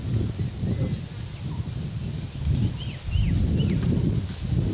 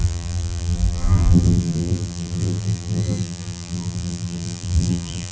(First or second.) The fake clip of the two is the second